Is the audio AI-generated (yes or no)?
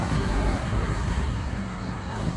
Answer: yes